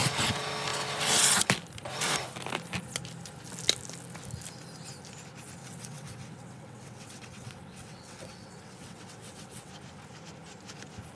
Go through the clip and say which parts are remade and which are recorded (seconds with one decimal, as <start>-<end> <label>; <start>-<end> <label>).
0.0-5.6 recorded; 5.6-9.7 remade; 9.7-11.2 recorded